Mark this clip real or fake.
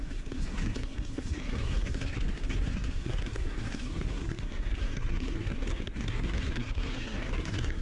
fake